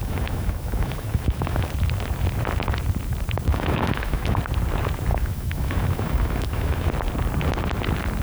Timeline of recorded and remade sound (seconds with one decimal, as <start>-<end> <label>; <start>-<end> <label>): 0.0-1.7 remade; 1.7-3.5 recorded; 3.5-4.4 remade; 4.4-5.1 recorded; 5.1-6.9 remade; 6.9-8.2 recorded